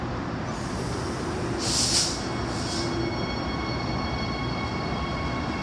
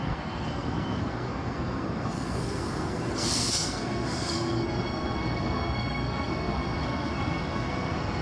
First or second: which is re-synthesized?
second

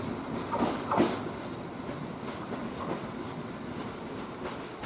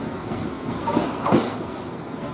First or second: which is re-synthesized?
second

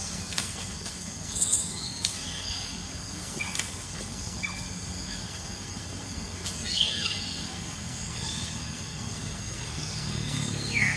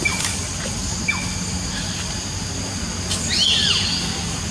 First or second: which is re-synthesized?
first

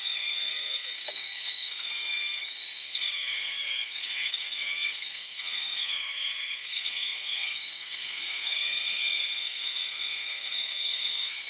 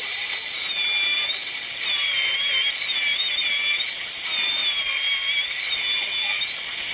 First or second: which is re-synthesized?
first